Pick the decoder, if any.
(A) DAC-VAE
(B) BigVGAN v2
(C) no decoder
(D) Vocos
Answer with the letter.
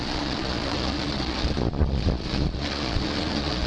D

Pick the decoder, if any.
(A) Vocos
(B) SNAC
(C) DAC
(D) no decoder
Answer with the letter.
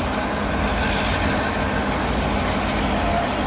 D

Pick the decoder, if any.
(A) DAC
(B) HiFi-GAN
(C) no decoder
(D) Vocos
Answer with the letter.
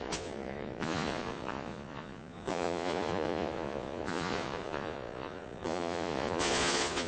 D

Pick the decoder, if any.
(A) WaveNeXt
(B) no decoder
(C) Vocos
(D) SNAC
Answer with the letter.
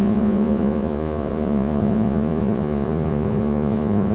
C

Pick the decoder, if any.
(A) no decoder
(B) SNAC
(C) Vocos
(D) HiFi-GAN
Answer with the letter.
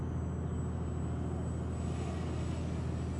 A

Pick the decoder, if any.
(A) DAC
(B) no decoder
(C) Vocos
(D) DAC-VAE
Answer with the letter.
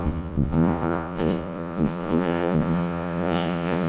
C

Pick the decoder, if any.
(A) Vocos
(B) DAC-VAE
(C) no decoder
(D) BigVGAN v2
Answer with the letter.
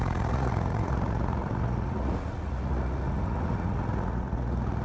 A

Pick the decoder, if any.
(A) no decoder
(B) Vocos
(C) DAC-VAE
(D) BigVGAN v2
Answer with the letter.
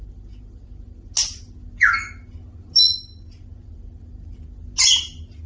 A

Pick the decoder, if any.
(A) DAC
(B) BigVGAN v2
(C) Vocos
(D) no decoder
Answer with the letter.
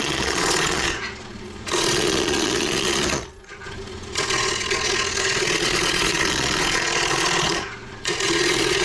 C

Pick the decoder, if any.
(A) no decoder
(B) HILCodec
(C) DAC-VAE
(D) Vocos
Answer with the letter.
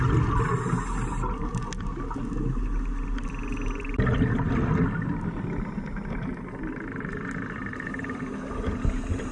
A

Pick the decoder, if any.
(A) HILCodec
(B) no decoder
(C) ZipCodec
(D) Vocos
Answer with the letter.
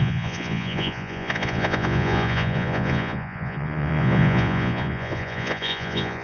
D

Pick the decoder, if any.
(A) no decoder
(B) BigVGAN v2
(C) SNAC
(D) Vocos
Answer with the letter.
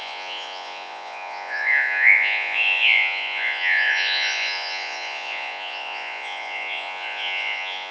D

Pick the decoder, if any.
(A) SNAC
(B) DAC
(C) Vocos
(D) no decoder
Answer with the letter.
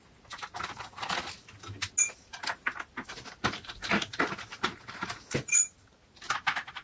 D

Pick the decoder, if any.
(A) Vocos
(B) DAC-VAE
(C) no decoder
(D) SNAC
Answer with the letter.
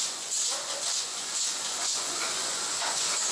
A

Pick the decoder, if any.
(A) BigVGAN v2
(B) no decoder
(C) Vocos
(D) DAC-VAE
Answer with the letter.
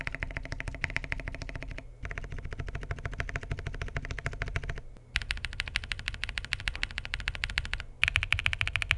B